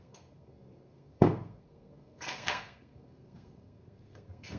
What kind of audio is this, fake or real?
fake